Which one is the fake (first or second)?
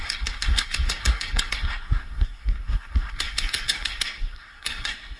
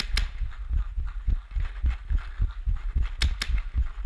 first